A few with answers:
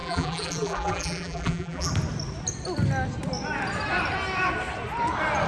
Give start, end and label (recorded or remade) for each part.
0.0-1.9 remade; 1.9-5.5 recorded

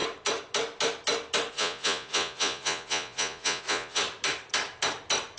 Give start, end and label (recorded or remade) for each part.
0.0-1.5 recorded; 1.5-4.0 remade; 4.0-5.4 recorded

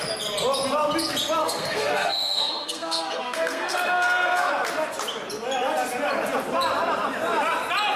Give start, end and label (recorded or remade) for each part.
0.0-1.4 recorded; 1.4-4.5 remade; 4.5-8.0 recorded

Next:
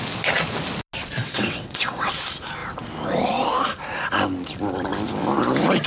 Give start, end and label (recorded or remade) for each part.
0.0-1.2 recorded; 1.2-2.1 remade; 2.1-5.9 recorded

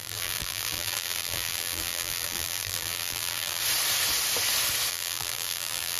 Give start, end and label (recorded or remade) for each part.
0.0-3.6 remade; 3.6-4.9 recorded; 4.9-6.0 remade

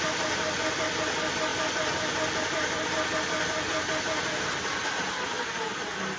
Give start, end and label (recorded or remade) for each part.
0.0-6.2 recorded